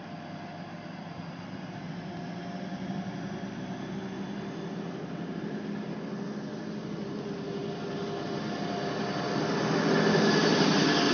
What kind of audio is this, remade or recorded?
recorded